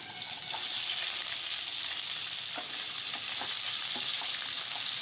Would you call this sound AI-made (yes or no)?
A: no